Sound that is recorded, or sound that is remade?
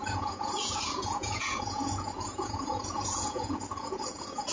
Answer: remade